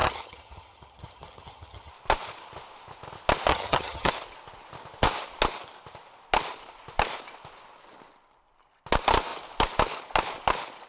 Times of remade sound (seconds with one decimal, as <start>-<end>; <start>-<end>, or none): 0.0-1.9; 3.5-4.1